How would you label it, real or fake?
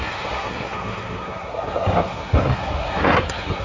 fake